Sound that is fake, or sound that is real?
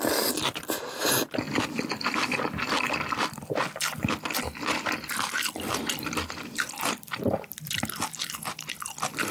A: real